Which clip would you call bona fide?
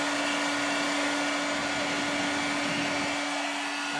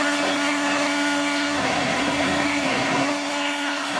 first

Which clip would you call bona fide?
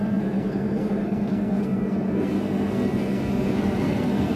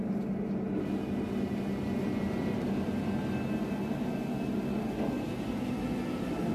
second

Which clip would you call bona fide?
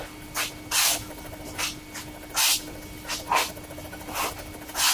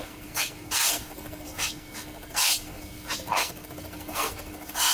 first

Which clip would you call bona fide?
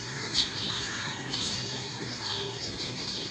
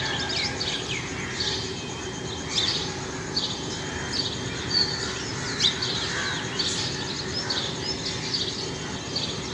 second